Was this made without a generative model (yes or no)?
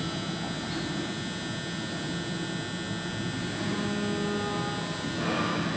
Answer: yes